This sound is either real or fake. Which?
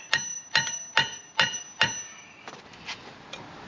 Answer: real